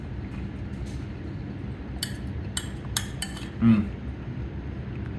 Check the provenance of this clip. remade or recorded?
recorded